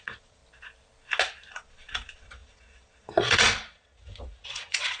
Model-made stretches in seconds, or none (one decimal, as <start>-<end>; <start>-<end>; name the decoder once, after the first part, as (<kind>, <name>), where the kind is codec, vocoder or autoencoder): 0.0-0.4 (vocoder, Vocos); 1.5-5.0